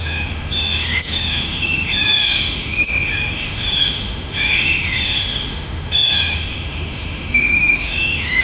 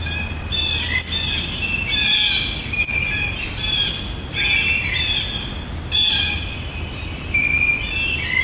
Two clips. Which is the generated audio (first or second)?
first